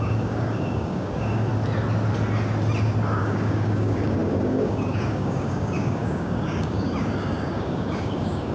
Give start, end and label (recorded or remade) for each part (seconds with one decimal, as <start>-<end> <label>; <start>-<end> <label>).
0.0-1.5 remade; 1.5-3.2 recorded; 3.2-8.5 remade